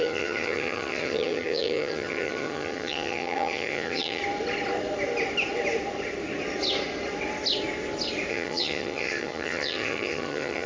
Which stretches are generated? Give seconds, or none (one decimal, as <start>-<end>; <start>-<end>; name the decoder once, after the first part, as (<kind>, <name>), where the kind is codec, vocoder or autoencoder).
0.0-4.2 (vocoder, HiFi-GAN); 8.3-10.7